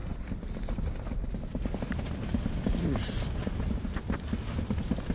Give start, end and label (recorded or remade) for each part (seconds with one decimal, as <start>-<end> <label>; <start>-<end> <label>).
0.0-5.1 recorded